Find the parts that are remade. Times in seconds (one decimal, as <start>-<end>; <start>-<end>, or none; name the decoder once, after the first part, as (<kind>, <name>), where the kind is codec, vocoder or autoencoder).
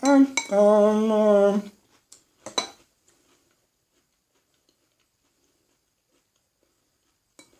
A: none